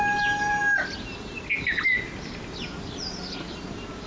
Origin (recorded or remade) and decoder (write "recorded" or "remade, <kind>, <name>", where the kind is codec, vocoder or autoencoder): recorded